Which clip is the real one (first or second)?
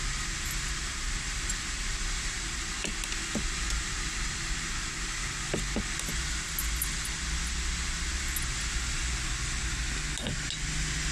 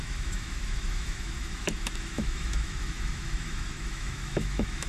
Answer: first